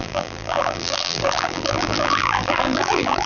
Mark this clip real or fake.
fake